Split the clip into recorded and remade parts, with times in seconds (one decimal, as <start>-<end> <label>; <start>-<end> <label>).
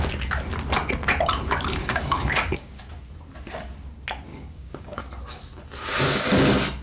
0.0-1.8 recorded; 1.8-2.8 remade; 2.8-4.3 recorded; 4.3-5.0 remade; 5.0-5.8 recorded; 5.8-6.3 remade; 6.3-6.8 recorded